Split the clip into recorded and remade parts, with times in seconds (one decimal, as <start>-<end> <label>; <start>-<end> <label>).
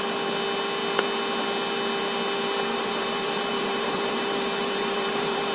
0.0-2.7 recorded; 2.7-5.5 remade